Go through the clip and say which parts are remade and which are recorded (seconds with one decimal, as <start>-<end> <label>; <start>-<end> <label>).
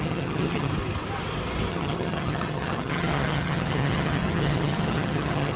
0.0-0.7 remade; 0.7-1.7 recorded; 1.7-5.6 remade